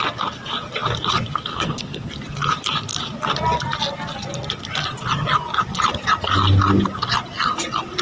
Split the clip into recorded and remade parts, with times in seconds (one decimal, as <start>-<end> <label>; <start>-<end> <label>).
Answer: 0.0-1.5 recorded; 1.5-2.1 remade; 2.1-8.0 recorded